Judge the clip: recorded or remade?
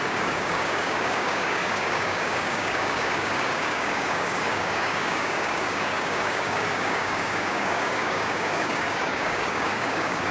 remade